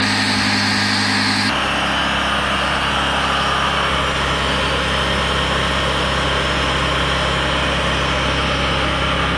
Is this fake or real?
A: real